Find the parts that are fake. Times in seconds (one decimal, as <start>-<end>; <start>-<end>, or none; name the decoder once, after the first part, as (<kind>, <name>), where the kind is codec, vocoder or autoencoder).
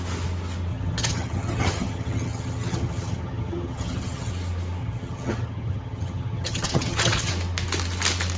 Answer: 0.7-4.3 (vocoder, HiFi-GAN); 4.8-7.3